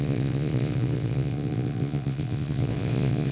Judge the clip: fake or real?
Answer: fake